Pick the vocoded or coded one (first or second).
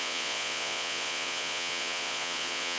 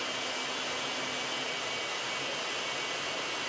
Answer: first